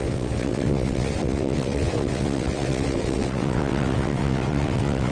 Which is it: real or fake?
fake